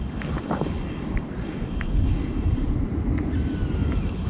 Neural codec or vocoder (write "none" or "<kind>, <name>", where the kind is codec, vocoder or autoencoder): none